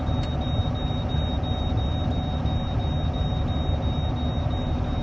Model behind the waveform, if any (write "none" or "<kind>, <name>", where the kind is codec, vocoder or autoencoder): none